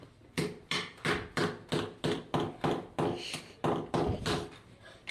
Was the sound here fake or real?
real